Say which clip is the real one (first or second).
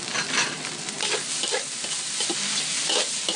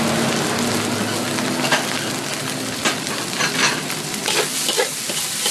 second